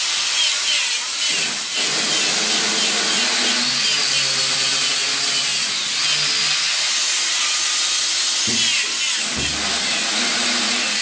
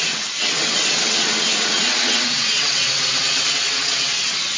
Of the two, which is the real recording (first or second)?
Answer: first